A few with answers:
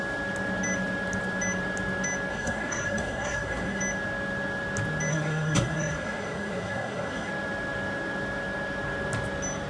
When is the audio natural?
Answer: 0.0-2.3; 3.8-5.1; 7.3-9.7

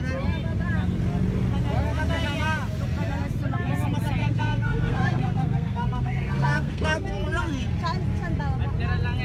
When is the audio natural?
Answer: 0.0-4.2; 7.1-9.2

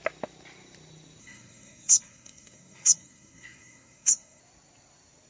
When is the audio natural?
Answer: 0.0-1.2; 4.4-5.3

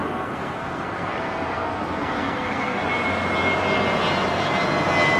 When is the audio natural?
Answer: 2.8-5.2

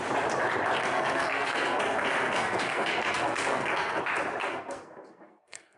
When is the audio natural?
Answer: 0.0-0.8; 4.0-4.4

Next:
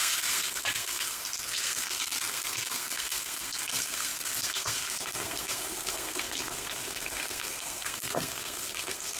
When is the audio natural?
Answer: none